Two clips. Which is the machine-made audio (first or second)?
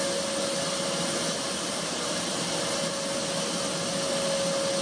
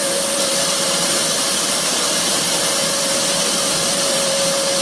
second